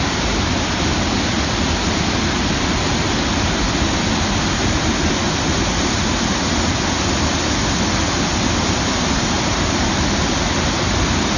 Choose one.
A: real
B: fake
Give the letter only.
A